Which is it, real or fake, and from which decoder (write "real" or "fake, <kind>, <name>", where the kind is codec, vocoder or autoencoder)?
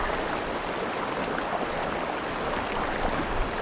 real